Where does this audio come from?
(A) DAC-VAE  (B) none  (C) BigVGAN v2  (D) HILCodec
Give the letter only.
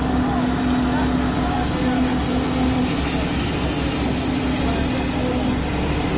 B